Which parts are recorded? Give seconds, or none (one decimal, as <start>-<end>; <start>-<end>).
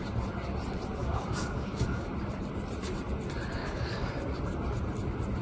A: 0.0-1.0; 2.1-3.6; 4.1-5.4